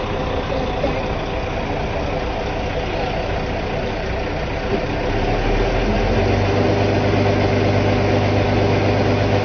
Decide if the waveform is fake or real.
real